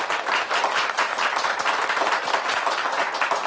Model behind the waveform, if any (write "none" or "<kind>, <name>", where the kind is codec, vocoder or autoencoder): none